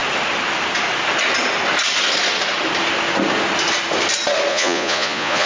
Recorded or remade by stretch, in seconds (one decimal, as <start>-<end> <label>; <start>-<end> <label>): 0.0-4.5 recorded; 4.5-5.5 remade